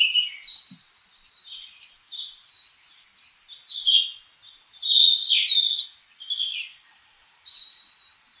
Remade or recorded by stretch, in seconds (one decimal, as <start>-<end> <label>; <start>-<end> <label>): 0.0-8.4 recorded